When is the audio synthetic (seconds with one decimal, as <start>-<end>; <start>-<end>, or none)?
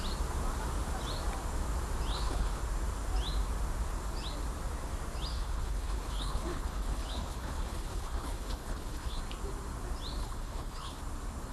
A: 2.1-2.6; 5.3-9.2; 10.2-11.0